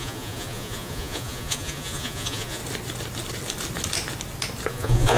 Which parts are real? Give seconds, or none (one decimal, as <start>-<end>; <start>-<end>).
2.6-4.7